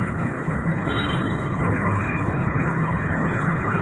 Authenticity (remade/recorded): remade